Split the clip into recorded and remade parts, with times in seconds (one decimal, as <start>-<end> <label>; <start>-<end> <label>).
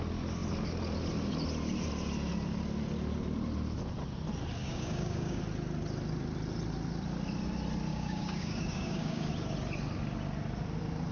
0.0-4.6 recorded; 4.6-5.4 remade; 5.4-7.9 recorded; 7.9-9.3 remade; 9.3-11.1 recorded